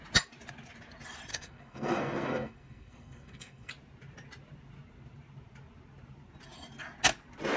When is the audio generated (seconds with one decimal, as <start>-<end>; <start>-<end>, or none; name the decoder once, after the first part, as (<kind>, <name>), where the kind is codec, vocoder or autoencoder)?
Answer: 1.3-3.7 (codec, SNAC)